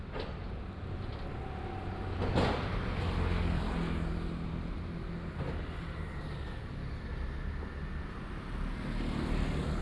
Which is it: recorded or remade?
recorded